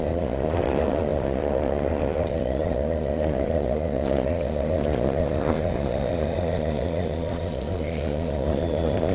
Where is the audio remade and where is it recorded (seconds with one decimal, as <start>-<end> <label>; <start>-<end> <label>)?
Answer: 0.0-9.1 remade

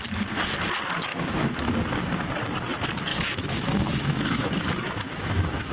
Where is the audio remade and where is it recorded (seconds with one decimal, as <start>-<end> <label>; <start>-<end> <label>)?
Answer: 0.0-1.1 recorded; 1.1-1.7 remade; 1.7-3.1 recorded; 3.1-5.7 remade

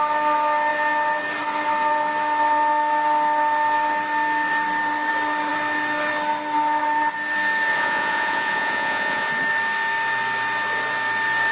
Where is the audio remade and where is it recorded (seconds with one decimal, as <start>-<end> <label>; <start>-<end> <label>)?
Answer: 0.0-7.7 recorded; 7.7-9.3 remade; 9.3-11.5 recorded

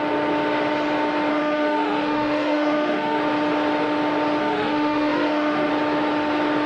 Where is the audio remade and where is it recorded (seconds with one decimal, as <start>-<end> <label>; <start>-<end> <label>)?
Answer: 0.0-1.3 recorded; 1.3-3.2 remade; 3.2-4.4 recorded; 4.4-5.7 remade; 5.7-6.7 recorded

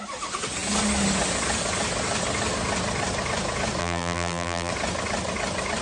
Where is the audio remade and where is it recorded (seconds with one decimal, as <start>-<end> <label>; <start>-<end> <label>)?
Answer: 0.0-3.8 recorded; 3.8-4.7 remade; 4.7-5.8 recorded

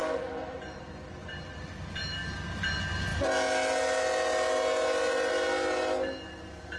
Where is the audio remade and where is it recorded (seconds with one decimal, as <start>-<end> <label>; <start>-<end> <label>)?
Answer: 0.0-6.8 recorded

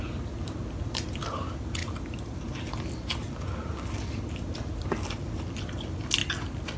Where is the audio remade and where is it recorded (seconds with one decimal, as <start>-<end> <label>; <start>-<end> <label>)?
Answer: 0.0-6.8 recorded